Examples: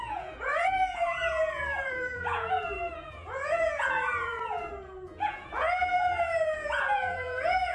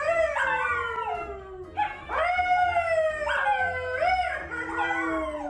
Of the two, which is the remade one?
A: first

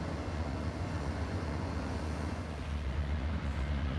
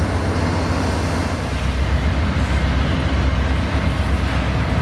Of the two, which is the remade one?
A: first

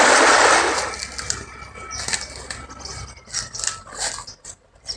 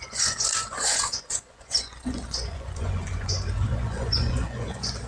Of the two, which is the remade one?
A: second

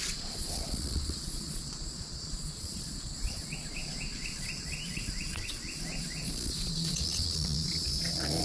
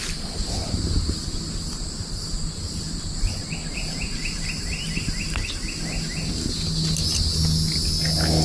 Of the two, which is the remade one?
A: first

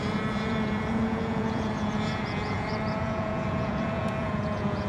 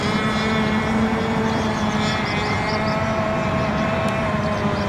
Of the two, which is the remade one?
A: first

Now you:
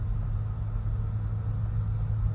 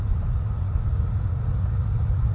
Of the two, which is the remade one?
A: second